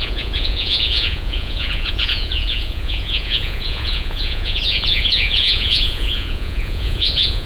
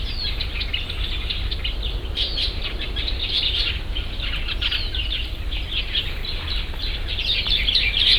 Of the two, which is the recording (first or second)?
second